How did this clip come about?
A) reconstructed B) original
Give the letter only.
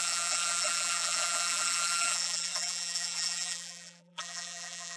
A